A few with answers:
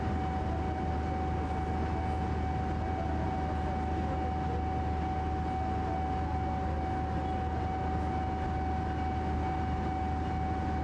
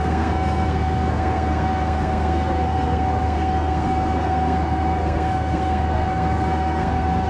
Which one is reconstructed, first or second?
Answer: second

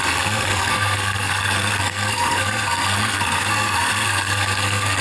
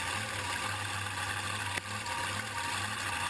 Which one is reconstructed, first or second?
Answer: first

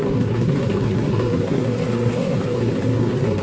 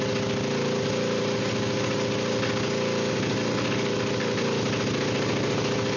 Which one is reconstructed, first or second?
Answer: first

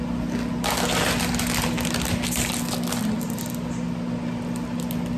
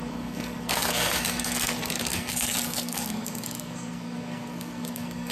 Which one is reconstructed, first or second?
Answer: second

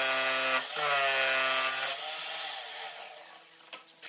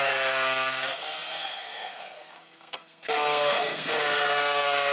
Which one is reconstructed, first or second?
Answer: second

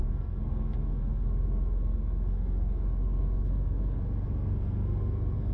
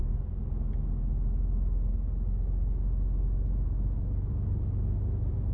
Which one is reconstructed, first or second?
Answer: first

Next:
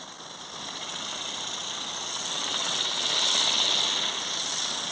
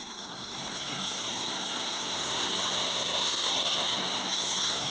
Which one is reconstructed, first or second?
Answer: second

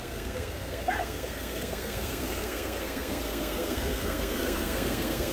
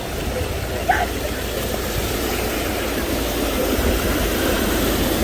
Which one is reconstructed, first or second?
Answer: first